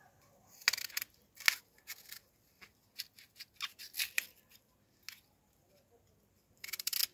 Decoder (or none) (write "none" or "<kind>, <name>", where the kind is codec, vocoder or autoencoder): none